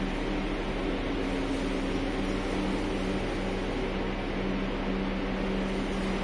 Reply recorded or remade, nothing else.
recorded